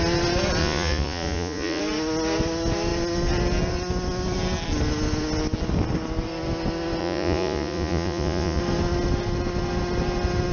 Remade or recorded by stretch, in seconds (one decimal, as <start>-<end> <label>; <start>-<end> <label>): 0.0-0.6 recorded; 0.6-1.8 remade; 1.8-7.0 recorded; 7.0-8.6 remade; 8.6-10.5 recorded